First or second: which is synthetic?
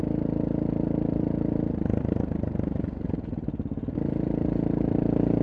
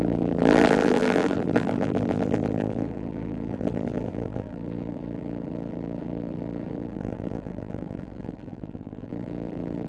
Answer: second